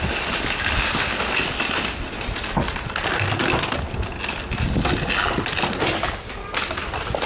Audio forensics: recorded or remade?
recorded